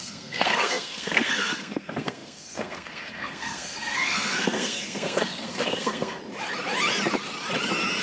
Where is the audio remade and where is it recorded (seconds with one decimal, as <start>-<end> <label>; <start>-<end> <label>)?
0.0-6.2 remade; 6.2-8.0 recorded